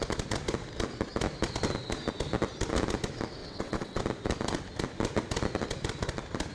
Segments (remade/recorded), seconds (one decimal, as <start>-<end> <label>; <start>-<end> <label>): 0.0-3.4 recorded; 3.4-4.0 remade; 4.0-6.5 recorded